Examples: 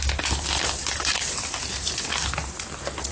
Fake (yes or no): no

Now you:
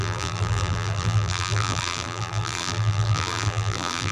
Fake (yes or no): yes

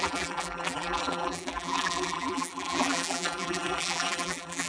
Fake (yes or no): yes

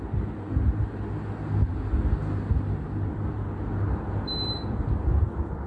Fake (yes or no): no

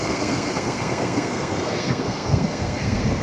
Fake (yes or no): yes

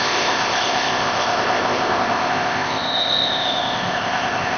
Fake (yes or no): yes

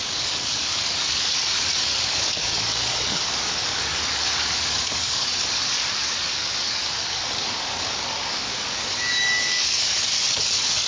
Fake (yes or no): yes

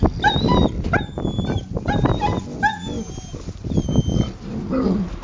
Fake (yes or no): no